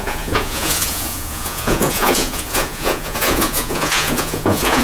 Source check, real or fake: fake